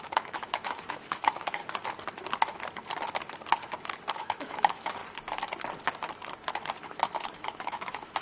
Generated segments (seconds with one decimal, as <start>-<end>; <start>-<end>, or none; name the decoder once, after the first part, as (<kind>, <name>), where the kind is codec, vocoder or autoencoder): 0.0-1.6 (autoencoder, DAC-VAE); 4.1-5.0; 6.8-8.2